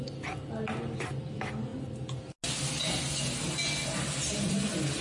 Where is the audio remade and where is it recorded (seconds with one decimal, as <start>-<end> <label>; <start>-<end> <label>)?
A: 0.0-5.0 recorded